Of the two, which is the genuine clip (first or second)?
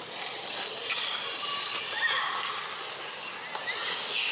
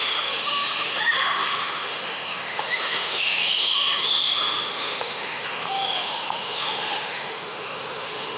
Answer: first